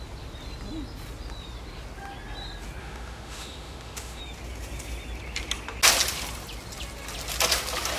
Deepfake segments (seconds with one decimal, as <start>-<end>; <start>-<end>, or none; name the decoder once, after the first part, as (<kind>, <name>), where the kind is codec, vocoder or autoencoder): 2.8-4.2 (autoencoder, DAC-VAE)